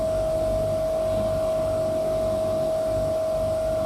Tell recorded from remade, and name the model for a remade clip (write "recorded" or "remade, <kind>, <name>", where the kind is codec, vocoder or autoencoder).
recorded